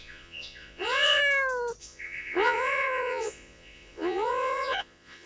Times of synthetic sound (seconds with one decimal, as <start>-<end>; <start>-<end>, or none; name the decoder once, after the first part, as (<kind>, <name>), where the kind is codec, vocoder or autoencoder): 0.0-1.2 (vocoder, Vocos); 1.8-5.3